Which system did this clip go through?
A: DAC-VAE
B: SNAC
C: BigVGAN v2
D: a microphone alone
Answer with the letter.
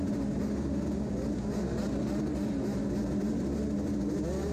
D